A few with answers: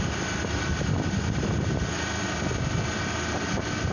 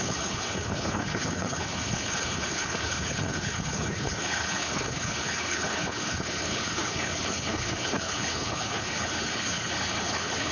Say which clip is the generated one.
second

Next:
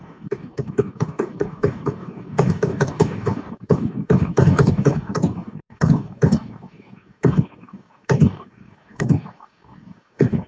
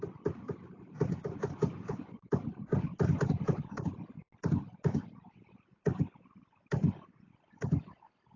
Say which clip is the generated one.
first